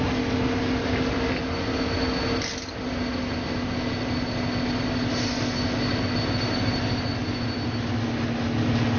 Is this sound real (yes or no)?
yes